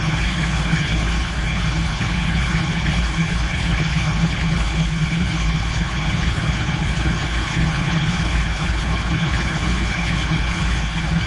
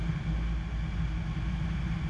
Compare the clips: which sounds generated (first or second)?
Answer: first